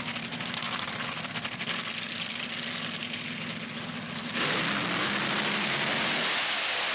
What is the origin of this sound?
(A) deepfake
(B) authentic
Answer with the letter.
B